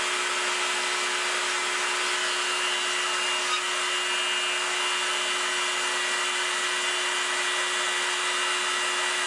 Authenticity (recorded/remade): recorded